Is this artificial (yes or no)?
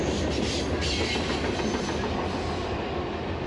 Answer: no